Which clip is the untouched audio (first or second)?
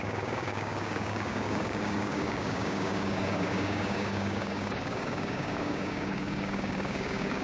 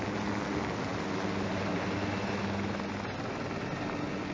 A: second